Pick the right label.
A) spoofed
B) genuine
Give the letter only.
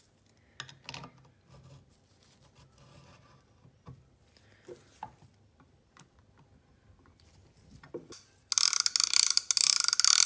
B